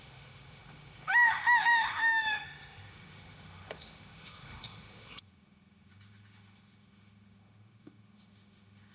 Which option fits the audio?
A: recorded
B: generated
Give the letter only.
B